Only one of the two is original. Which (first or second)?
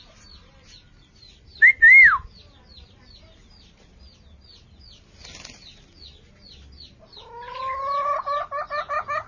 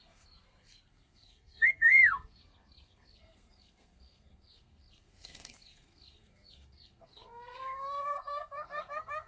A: first